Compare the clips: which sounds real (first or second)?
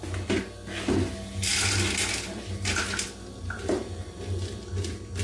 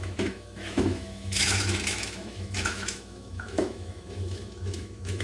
first